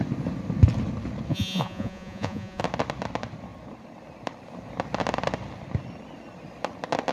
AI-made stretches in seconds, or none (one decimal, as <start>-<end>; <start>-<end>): 1.3-2.6